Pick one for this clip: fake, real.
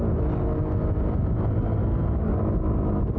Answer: real